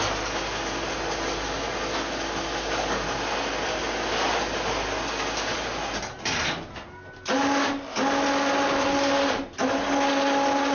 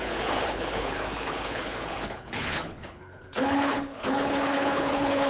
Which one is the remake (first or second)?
second